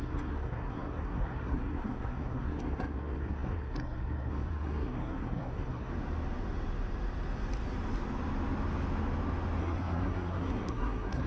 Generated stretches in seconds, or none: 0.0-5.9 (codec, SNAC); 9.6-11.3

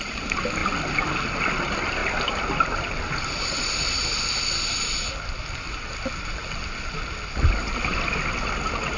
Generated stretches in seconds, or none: none

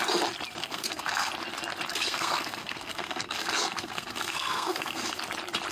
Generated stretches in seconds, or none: 0.6-1.3 (codec, SNAC); 1.9-5.2

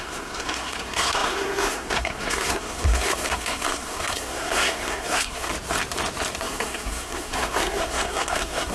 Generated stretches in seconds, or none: 0.0-5.5 (codec, SNAC); 6.4-8.7